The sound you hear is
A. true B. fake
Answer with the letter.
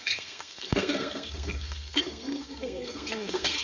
B